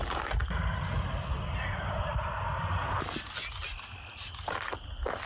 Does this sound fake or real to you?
real